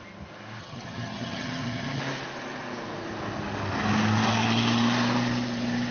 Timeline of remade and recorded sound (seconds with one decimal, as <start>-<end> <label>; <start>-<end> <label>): 0.0-0.6 recorded; 0.6-2.0 remade; 2.0-5.9 recorded